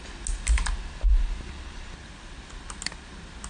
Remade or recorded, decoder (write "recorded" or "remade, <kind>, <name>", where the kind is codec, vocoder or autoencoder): recorded